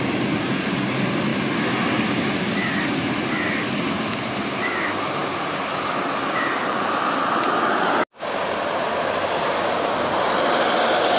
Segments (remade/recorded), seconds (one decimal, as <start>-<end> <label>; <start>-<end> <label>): 0.0-11.2 recorded